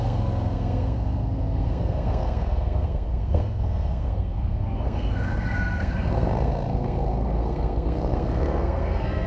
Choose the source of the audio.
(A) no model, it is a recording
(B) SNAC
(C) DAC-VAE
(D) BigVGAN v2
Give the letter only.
B